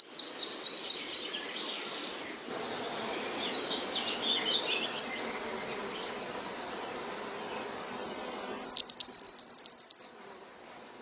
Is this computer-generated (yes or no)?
no